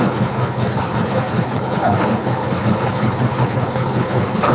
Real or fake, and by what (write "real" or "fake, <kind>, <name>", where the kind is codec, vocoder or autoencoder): fake, codec, HILCodec